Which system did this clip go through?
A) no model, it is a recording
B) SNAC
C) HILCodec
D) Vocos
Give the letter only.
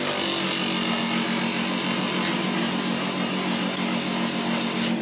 A